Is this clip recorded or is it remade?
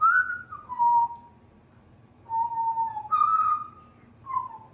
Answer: recorded